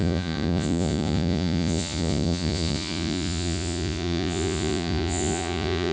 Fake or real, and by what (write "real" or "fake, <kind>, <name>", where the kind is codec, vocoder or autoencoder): fake, vocoder, Vocos